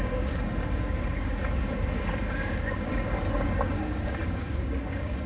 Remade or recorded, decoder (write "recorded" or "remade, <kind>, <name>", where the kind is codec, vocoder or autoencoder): remade, codec, DAC